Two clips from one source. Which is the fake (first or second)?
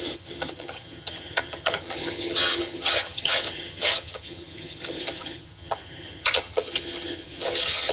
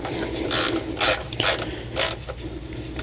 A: first